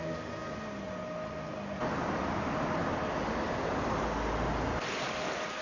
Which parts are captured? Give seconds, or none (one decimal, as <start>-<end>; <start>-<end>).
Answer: 0.0-5.6